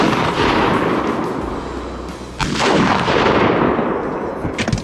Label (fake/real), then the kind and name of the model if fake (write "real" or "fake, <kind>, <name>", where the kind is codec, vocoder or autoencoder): real